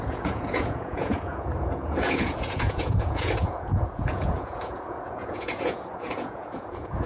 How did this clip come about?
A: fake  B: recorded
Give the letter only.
A